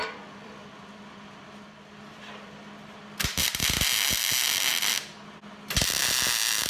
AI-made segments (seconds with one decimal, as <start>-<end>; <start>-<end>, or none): 0.0-2.7; 3.6-4.9; 6.0-6.7